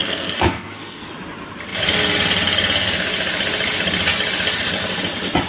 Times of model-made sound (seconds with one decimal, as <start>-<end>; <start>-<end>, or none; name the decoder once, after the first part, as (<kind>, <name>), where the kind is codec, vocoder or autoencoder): 0.0-1.1 (codec, SNAC)